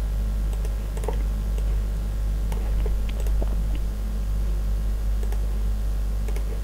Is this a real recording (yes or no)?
yes